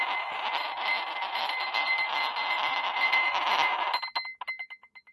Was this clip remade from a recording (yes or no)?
no